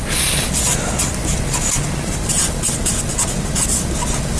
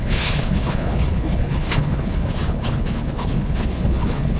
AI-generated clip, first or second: second